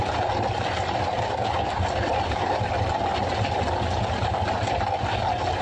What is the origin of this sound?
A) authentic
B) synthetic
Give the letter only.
A